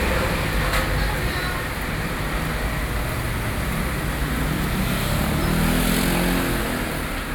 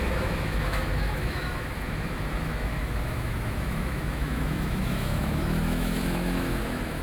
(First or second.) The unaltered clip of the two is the first